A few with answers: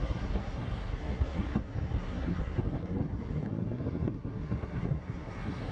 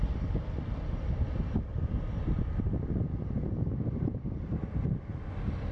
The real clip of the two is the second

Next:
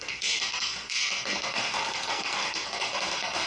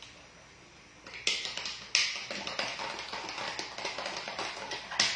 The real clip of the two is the second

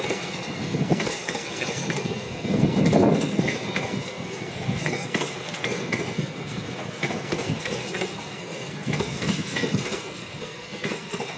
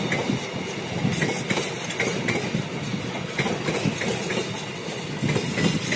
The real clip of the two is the second